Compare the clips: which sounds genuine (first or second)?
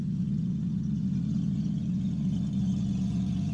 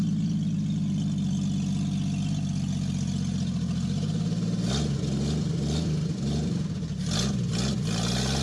second